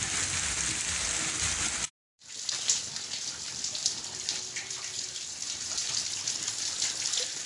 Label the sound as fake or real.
real